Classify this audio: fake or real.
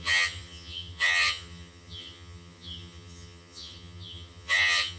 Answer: fake